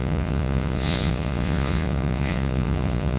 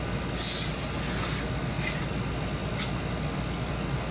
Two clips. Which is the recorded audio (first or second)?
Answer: second